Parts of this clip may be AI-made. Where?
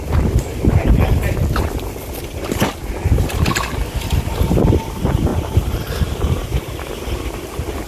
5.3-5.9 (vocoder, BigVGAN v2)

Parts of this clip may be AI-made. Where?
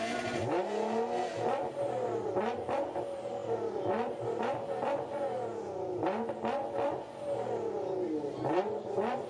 none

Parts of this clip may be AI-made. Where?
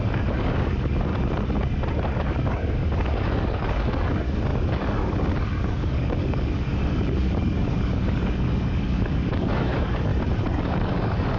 0.0-1.1 (codec, DAC); 2.2-10.1; 10.6-11.4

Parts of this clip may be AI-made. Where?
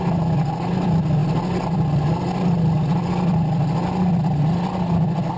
none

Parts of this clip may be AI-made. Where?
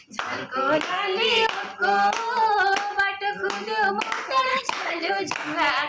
4.5-5.1 (codec, HILCodec)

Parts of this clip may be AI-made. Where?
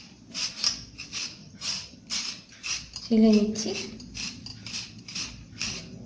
1.4-2.0 (vocoder, HiFi-GAN)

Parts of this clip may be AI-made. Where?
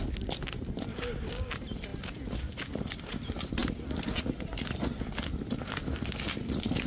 0.9-1.5 (codec, DAC)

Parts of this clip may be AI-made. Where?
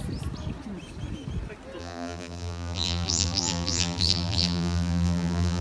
1.8-5.6 (vocoder, BigVGAN v2)